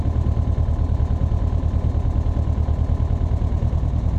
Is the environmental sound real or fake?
real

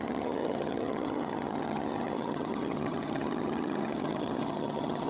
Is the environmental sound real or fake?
fake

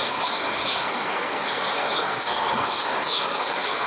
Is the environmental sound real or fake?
fake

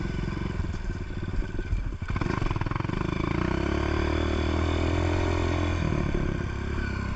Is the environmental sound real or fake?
real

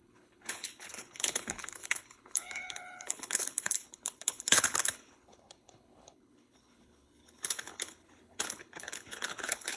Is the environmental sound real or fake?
fake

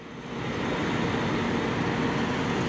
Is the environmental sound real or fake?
real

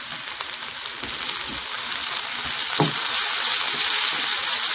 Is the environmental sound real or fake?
real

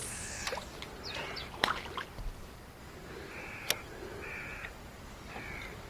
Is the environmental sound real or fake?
real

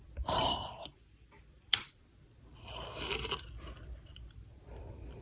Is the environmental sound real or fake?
fake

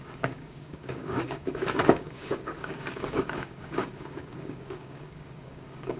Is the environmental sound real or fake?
fake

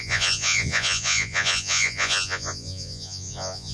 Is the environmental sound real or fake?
fake